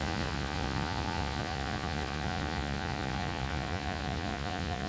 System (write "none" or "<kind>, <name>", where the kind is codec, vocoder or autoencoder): vocoder, Vocos